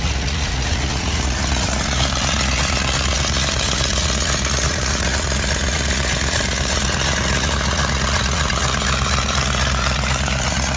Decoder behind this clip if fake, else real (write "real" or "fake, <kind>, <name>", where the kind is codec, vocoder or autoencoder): fake, vocoder, Vocos